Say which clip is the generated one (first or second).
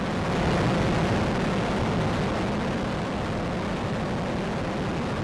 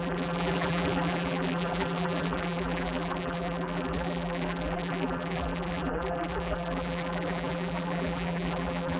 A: second